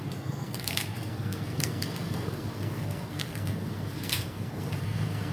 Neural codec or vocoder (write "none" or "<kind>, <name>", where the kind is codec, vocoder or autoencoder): codec, SNAC